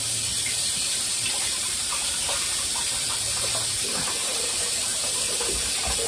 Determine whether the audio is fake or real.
fake